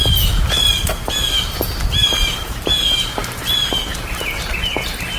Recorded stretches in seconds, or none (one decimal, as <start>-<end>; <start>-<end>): 0.0-5.2